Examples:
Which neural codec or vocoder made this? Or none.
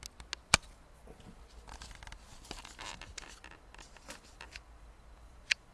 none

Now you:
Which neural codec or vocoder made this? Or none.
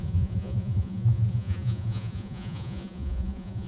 vocoder, Vocos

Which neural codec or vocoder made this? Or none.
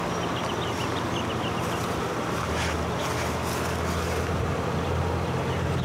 none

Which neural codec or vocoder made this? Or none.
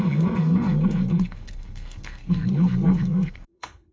codec, SNAC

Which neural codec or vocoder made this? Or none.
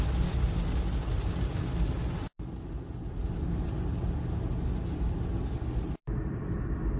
none